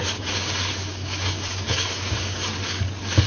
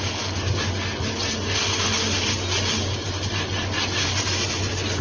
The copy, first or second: first